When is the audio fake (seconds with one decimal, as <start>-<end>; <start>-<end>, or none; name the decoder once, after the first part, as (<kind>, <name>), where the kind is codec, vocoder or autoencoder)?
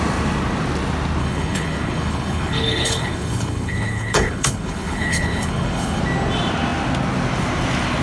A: 1.2-6.0 (codec, HILCodec)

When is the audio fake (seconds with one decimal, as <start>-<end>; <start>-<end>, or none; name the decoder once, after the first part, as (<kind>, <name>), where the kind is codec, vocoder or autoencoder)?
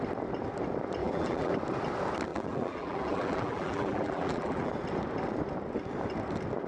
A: 1.0-1.5 (vocoder, BigVGAN v2); 2.3-4.7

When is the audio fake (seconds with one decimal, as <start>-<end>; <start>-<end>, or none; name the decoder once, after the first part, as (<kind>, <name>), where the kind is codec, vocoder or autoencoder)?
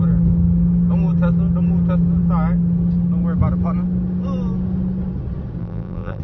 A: 5.6-6.2 (vocoder, BigVGAN v2)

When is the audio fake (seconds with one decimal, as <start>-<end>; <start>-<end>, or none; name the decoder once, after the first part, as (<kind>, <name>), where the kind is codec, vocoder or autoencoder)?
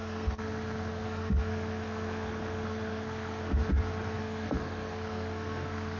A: 0.0-3.6 (codec, SNAC); 4.2-6.0